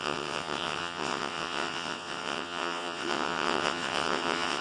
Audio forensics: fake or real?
fake